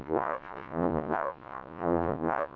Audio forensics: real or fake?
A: fake